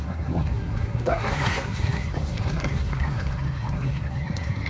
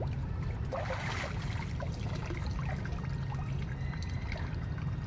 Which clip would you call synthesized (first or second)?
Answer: first